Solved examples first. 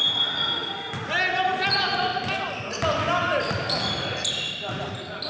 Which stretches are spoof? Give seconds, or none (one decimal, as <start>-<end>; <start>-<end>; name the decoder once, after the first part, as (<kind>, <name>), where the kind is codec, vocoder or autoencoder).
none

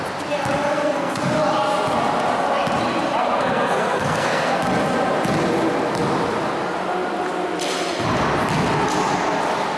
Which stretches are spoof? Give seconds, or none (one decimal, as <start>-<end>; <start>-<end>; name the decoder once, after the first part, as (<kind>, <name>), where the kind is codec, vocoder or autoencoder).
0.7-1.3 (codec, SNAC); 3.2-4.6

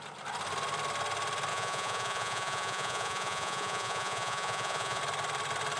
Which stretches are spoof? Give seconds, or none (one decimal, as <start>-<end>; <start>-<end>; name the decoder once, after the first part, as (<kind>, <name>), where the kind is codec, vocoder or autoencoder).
1.5-5.0 (vocoder, Vocos)